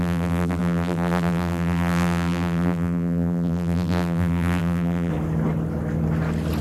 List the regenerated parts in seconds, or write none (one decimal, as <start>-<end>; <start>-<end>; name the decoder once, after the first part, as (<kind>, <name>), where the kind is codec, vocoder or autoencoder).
0.0-5.1 (vocoder, BigVGAN v2)